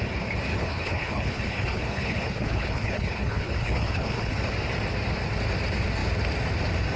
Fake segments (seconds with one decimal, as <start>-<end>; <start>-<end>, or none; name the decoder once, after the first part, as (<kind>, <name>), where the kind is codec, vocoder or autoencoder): 0.5-4.4 (codec, HILCodec)